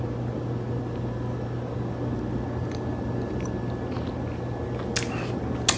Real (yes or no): yes